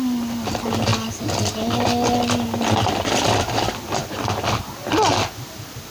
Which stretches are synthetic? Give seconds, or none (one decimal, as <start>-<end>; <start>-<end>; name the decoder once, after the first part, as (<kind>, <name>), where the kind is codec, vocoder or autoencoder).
none